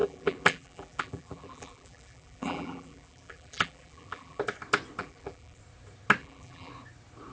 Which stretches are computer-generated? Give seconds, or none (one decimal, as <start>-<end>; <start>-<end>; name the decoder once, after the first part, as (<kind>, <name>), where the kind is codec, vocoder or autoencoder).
0.0-4.4 (vocoder, BigVGAN v2); 5.0-5.6; 6.2-6.7